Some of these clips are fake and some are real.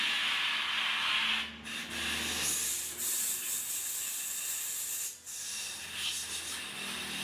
real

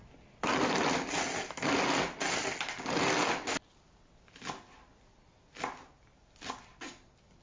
real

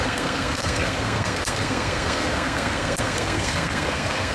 fake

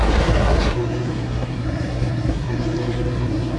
fake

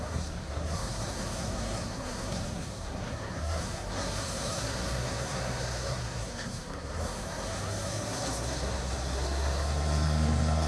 fake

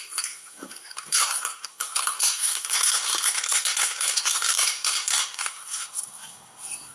fake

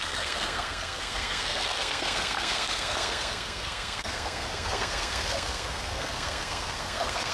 fake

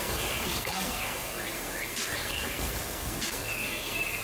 fake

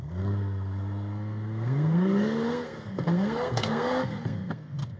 fake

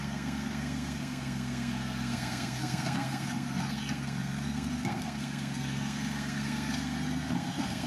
fake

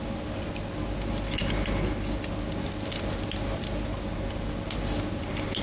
real